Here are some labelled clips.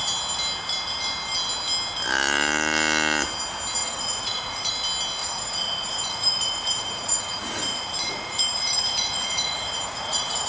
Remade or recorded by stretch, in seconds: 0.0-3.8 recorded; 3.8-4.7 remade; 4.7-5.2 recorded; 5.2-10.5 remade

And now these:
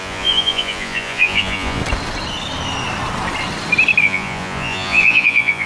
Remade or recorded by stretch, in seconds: 0.0-1.8 remade; 1.8-4.0 recorded; 4.0-5.7 remade

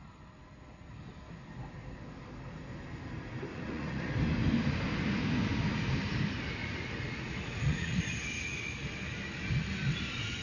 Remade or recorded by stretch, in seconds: 0.0-3.5 recorded; 3.5-4.1 remade; 4.1-6.6 recorded; 6.6-8.0 remade; 8.0-10.4 recorded

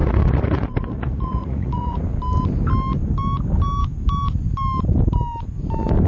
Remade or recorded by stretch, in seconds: 0.0-2.0 remade; 2.0-6.1 recorded